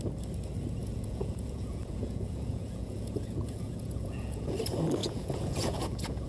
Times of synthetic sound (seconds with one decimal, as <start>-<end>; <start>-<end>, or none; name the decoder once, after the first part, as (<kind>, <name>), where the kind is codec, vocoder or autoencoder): 0.8-4.6 (vocoder, Vocos); 5.0-6.3